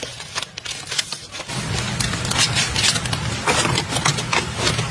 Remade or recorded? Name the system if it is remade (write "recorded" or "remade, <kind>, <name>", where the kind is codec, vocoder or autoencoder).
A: recorded